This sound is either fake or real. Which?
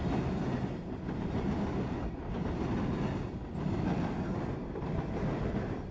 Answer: real